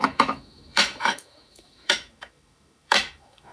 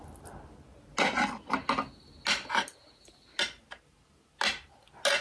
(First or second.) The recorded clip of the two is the second